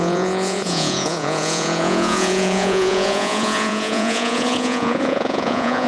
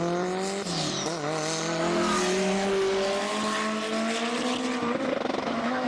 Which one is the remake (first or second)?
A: first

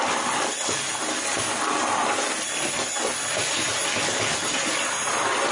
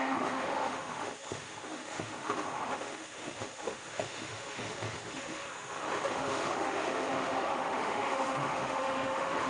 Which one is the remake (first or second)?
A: second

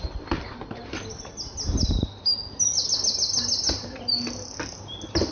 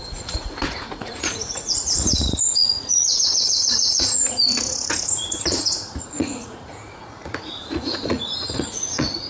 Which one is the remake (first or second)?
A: second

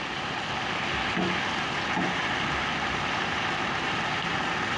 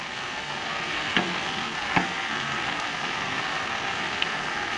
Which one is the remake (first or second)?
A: second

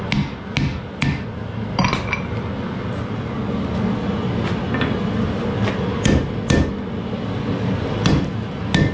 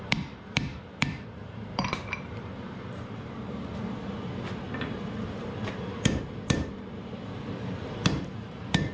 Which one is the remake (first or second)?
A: second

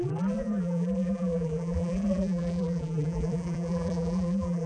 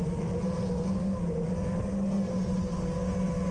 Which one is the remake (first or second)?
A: first